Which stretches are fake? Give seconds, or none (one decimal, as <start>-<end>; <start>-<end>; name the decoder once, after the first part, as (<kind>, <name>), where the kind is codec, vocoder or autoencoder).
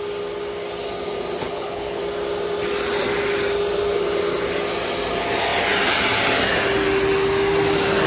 1.4-2.0 (codec, HILCodec)